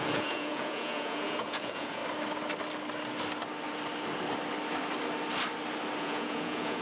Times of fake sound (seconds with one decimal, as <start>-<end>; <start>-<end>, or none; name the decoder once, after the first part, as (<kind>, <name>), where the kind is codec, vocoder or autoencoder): 0.0-2.0 (vocoder, Vocos); 6.0-6.8